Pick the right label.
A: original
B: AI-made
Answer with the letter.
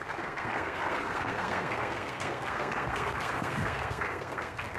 B